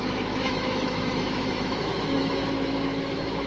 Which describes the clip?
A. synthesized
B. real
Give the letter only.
A